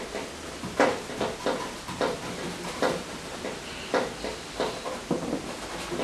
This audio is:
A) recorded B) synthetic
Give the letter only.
A